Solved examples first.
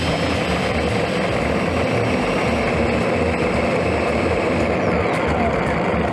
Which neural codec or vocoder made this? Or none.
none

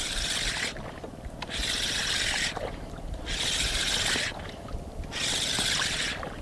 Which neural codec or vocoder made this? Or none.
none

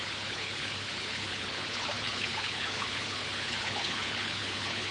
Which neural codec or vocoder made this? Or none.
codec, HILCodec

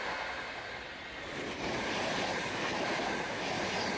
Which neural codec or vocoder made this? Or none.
none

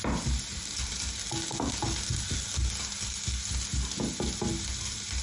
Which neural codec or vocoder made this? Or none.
none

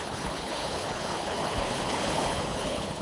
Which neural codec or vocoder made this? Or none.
codec, HILCodec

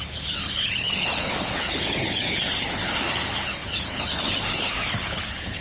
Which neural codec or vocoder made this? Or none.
codec, HILCodec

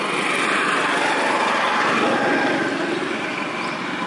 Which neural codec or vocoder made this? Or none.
none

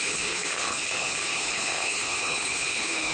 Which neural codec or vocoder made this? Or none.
codec, HILCodec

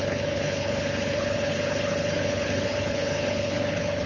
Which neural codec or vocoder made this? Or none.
codec, HILCodec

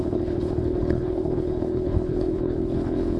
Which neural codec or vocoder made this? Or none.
codec, HILCodec